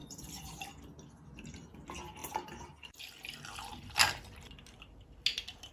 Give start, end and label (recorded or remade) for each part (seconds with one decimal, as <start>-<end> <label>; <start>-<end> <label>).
0.0-5.7 recorded

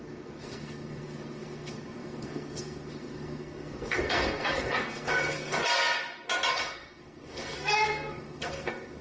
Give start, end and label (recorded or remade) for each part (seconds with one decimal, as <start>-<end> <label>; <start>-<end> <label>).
0.0-5.6 remade; 5.6-6.5 recorded; 6.5-9.0 remade

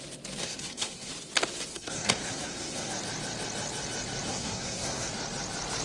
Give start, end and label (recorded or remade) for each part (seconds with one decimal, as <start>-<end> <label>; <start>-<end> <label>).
0.0-0.4 recorded; 0.4-1.1 remade; 1.1-1.7 recorded; 1.7-2.9 remade; 2.9-4.3 recorded; 4.3-5.1 remade; 5.1-5.8 recorded

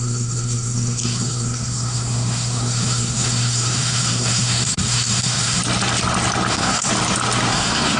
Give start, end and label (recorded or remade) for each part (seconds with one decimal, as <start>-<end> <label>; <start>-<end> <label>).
0.0-5.6 remade; 5.6-6.5 recorded; 6.5-6.9 remade; 6.9-7.5 recorded; 7.5-8.0 remade

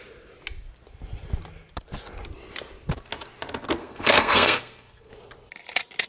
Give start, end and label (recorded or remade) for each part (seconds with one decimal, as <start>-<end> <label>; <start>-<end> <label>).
0.0-3.8 recorded; 3.8-5.1 remade; 5.1-6.1 recorded